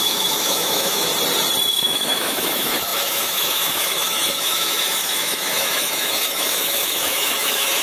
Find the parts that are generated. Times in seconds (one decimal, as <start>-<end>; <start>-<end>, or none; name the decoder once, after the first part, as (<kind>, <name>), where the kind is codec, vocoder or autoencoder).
0.0-1.1 (autoencoder, DAC-VAE); 1.7-7.8